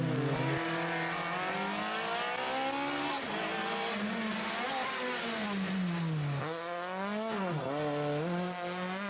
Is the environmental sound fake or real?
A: real